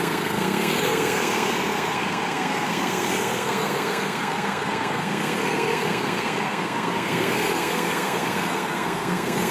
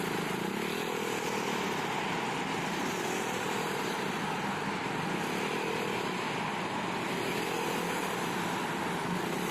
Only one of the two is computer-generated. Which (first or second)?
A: first